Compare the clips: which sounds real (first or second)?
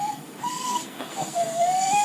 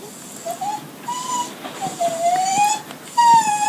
second